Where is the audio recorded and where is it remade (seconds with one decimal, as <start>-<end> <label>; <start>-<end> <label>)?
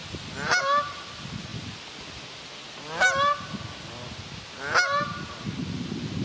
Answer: 0.0-6.2 recorded